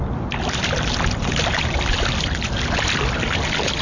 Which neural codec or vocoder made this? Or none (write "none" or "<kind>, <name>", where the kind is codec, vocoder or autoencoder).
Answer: none